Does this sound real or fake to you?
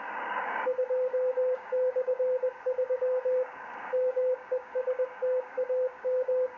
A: fake